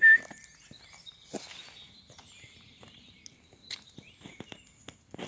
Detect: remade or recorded recorded